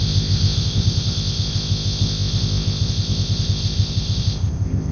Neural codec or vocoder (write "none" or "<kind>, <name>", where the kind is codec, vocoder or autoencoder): codec, ZipCodec